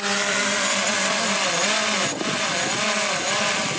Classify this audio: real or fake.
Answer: real